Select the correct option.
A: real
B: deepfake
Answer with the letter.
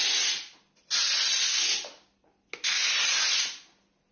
A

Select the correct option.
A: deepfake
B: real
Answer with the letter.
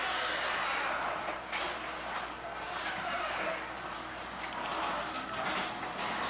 B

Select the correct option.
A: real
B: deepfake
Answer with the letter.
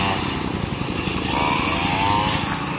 A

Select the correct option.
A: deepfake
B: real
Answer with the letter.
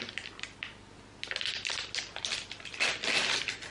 B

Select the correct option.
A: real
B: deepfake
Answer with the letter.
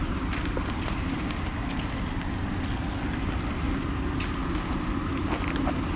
A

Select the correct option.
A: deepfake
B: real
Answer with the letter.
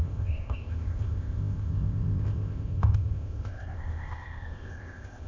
A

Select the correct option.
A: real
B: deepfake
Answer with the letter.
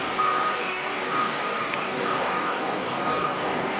B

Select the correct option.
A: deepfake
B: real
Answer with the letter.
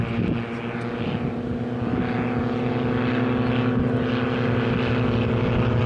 B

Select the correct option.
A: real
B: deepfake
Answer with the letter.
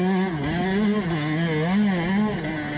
A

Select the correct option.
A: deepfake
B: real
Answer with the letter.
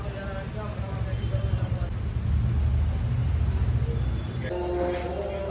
B